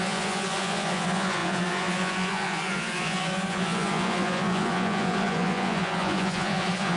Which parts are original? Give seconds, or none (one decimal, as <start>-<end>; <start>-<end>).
none